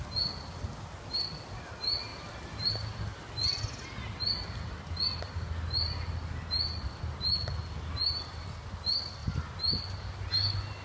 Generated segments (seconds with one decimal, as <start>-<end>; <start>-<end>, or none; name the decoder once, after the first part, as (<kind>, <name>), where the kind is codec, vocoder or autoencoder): none